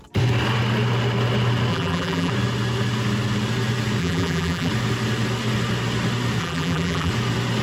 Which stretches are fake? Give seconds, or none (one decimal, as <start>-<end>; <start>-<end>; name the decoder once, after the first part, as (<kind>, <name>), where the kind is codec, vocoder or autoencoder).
1.7-2.3 (vocoder, BigVGAN v2); 4.0-4.7; 6.4-7.1